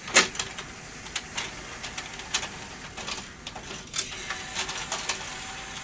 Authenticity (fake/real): real